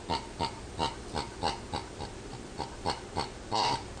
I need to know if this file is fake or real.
real